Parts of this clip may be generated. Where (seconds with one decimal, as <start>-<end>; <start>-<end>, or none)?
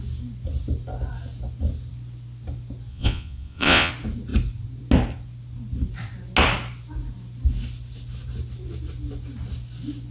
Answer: 2.9-3.9